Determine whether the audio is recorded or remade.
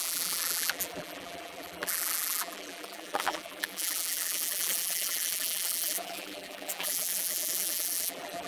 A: remade